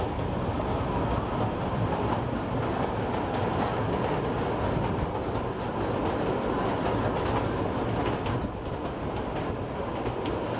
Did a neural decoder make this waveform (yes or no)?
no